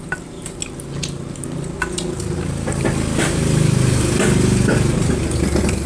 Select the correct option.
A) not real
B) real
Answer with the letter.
B